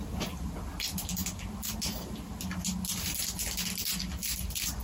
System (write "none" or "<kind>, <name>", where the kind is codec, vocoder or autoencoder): none